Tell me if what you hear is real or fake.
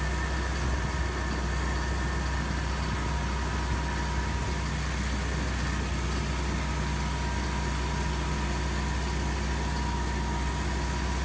real